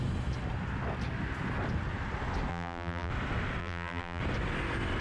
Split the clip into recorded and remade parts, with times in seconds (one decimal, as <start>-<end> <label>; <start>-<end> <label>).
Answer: 0.0-2.5 recorded; 2.5-3.1 remade; 3.1-3.6 recorded; 3.6-4.2 remade; 4.2-5.0 recorded